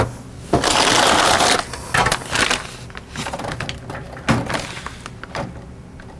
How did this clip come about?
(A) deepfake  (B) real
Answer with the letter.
B